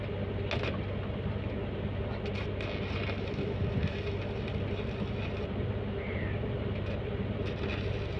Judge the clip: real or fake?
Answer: real